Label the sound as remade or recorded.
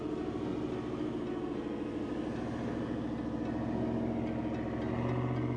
recorded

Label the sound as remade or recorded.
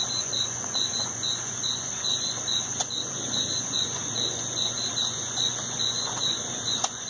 remade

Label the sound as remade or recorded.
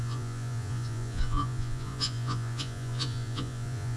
remade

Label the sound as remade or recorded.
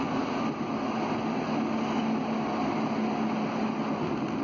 recorded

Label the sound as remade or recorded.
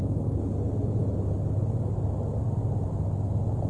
recorded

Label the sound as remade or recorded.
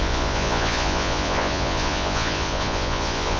remade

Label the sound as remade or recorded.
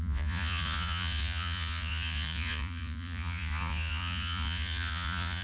remade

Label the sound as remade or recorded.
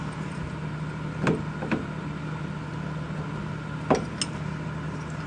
recorded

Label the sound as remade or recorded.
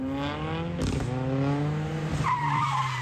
recorded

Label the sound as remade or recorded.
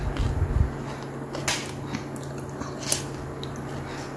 recorded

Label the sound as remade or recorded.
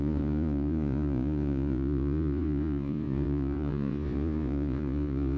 remade